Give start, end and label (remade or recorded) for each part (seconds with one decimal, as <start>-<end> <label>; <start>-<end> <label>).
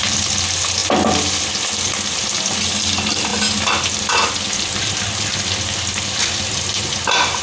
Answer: 0.0-7.4 recorded